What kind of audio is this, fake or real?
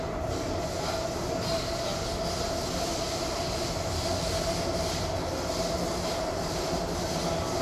real